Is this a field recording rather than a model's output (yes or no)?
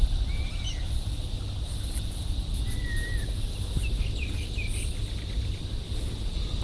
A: yes